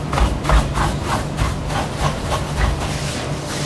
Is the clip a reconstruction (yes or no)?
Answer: no